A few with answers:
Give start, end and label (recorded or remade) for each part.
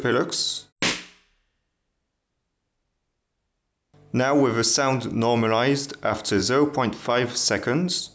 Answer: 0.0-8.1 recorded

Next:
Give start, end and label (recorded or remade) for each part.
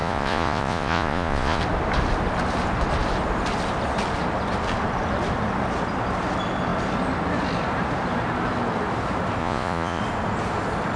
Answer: 0.0-1.6 remade; 1.6-9.4 recorded; 9.4-10.0 remade; 10.0-11.0 recorded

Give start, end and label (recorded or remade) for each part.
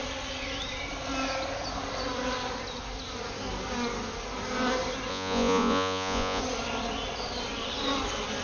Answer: 0.0-5.1 recorded; 5.1-6.4 remade; 6.4-8.4 recorded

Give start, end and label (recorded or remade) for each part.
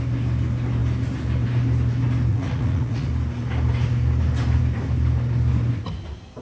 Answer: 0.0-2.3 recorded; 2.3-3.1 remade; 3.1-6.4 recorded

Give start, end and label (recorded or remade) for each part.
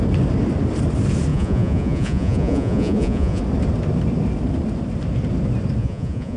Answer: 0.0-1.3 recorded; 1.3-3.4 remade; 3.4-5.8 recorded; 5.8-6.4 remade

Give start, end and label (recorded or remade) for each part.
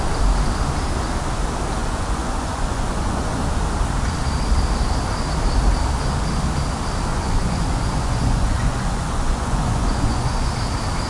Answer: 0.0-1.8 recorded; 1.8-3.4 remade; 3.4-7.1 recorded; 7.1-10.5 remade; 10.5-11.1 recorded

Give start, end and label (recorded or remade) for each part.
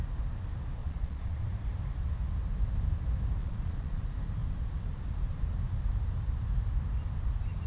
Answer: 0.0-0.8 recorded; 0.8-1.4 remade; 1.4-3.4 recorded; 3.4-4.0 remade; 4.0-7.7 recorded